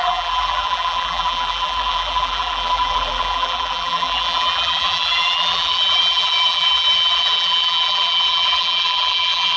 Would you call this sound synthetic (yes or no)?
yes